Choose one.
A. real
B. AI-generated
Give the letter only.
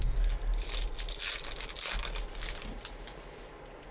A